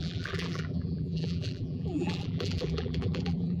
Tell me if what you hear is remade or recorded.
remade